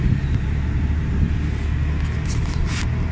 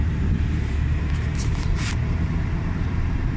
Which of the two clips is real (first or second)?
first